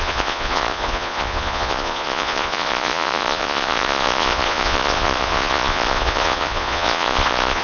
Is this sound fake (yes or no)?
yes